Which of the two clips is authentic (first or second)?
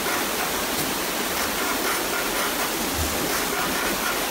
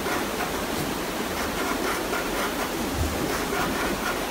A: first